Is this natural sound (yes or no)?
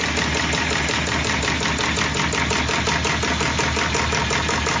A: yes